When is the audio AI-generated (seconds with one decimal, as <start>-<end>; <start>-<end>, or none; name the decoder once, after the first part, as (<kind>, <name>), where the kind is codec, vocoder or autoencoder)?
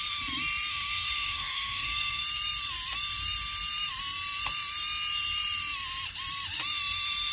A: 0.7-2.2 (codec, SNAC)